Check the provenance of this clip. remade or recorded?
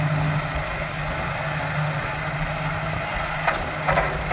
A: recorded